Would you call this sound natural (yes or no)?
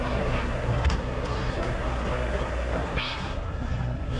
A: no